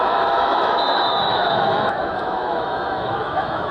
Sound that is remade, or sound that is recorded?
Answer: remade